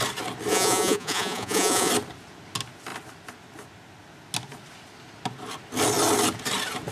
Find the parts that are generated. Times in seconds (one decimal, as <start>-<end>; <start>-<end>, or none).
0.5-1.9